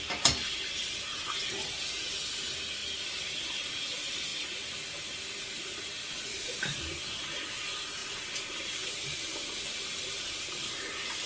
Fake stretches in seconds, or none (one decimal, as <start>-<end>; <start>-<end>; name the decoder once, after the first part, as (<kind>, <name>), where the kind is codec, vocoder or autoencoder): 6.0-6.5 (vocoder, Vocos)